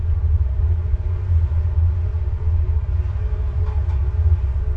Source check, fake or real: real